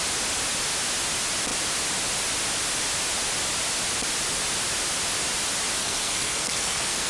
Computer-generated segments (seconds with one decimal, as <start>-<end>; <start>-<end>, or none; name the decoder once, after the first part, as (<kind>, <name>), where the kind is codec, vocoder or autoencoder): 5.8-7.1 (codec, SNAC)